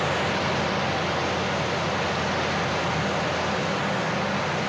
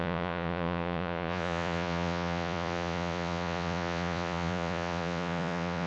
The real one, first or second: first